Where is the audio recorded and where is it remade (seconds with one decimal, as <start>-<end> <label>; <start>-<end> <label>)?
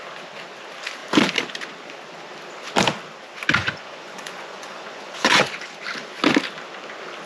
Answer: 0.0-3.6 recorded; 3.6-5.5 remade; 5.5-7.3 recorded